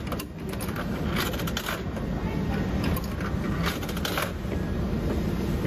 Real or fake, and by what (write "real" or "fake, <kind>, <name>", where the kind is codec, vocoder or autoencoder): real